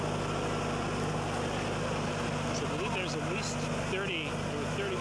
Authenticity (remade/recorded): recorded